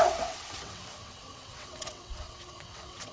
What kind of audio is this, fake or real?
fake